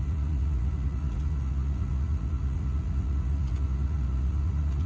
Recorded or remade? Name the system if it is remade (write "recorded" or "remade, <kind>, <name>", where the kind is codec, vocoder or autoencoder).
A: remade, vocoder, Vocos